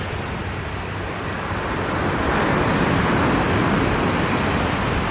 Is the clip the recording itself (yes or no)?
yes